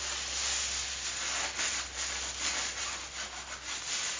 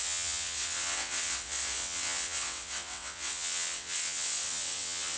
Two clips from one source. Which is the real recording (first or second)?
first